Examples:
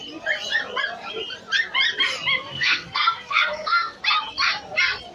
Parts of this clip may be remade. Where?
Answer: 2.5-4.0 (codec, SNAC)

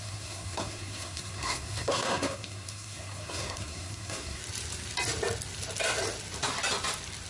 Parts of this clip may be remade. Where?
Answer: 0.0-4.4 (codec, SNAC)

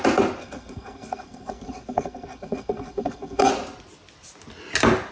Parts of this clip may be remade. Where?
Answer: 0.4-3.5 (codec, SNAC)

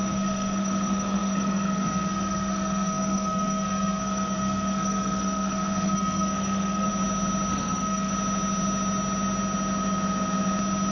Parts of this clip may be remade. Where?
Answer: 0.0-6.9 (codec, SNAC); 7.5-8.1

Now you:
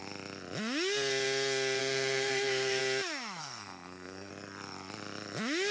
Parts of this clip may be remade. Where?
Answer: 1.8-2.8 (codec, SNAC); 3.4-4.3

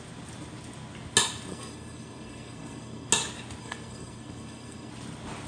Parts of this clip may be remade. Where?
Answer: 1.5-3.1 (codec, SNAC); 3.6-4.9

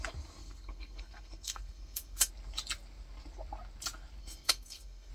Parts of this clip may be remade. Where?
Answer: 0.4-2.3 (codec, SNAC); 4.2-5.1